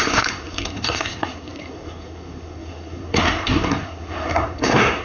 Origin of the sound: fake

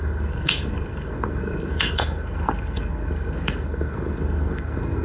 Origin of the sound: fake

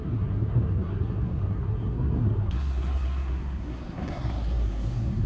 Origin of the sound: fake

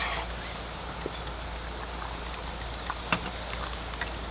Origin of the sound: real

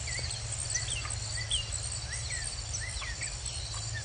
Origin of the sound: real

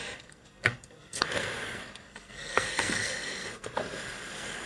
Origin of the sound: fake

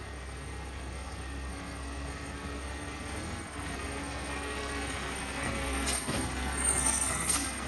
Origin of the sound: fake